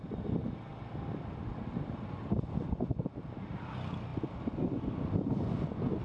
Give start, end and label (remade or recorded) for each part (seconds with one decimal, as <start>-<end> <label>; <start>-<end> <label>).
0.0-6.0 recorded